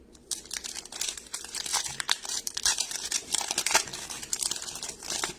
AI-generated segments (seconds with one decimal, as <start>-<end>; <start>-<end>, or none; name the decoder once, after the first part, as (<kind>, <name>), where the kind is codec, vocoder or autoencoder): 1.7-3.5 (vocoder, BigVGAN v2)